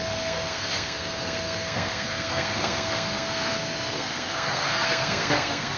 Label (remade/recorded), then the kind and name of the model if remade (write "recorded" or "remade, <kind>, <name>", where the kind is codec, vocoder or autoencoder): remade, codec, SNAC